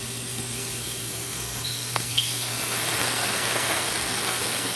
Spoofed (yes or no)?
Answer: yes